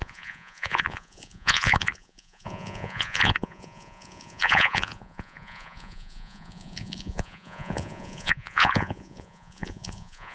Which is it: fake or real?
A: fake